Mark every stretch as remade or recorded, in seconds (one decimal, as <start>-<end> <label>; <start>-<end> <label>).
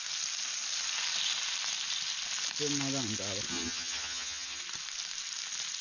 0.0-3.5 recorded; 3.5-4.6 remade; 4.6-5.8 recorded